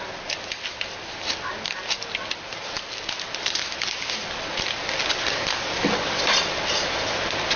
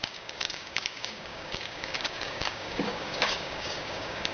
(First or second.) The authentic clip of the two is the first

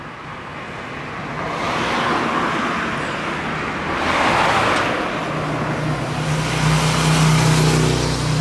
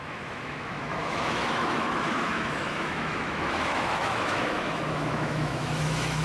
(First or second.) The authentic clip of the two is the first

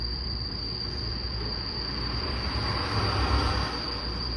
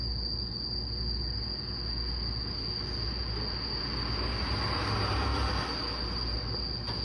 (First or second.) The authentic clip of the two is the second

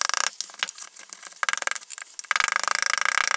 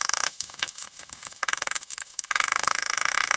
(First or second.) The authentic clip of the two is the first